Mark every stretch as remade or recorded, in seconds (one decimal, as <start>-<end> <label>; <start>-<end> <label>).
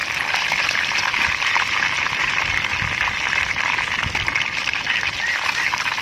0.0-6.0 recorded